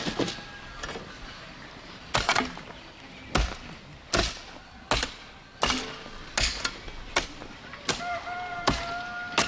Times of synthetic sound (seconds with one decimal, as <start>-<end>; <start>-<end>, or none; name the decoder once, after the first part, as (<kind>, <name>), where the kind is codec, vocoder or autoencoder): none